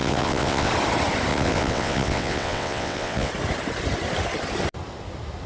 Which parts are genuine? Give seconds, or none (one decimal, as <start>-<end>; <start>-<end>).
0.7-1.3; 3.3-5.5